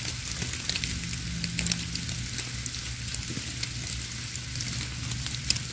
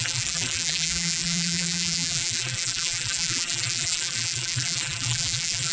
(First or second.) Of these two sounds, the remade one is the second